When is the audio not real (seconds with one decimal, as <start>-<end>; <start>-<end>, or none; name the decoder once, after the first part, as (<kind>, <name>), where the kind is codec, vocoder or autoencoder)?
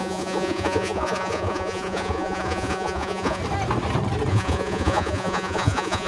0.0-3.4 (vocoder, Vocos); 4.3-6.1